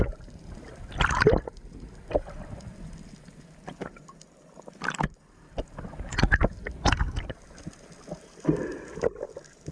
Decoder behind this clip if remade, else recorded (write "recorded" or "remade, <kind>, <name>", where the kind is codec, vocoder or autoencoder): recorded